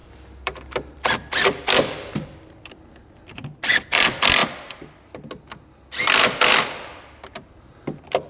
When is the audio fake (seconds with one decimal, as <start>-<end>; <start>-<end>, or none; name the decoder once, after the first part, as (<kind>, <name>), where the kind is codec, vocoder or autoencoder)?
0.0-3.7 (vocoder, BigVGAN v2)

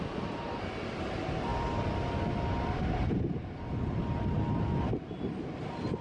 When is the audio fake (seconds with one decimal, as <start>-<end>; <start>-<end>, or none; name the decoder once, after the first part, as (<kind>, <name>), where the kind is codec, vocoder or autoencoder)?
none

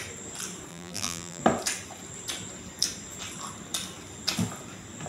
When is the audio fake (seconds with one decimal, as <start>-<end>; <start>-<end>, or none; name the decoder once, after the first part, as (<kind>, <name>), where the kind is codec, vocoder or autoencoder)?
0.7-1.4 (vocoder, BigVGAN v2)

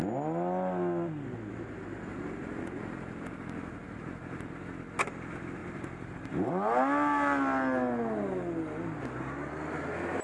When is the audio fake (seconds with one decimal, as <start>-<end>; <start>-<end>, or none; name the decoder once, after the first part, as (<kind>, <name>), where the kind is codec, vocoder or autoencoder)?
2.1-4.5 (vocoder, BigVGAN v2); 5.6-6.5

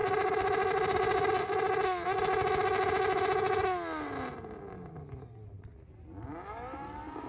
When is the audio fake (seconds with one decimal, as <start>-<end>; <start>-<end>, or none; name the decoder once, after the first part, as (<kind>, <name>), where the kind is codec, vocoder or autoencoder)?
0.0-1.3 (vocoder, BigVGAN v2)

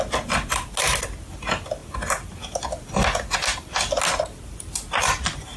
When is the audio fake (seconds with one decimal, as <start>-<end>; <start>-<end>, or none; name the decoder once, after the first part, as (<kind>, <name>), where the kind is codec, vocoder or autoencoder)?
none

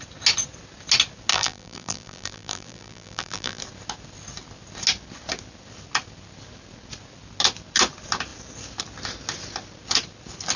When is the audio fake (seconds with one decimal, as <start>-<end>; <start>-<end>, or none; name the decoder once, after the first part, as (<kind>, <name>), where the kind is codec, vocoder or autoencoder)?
1.3-3.6 (vocoder, BigVGAN v2)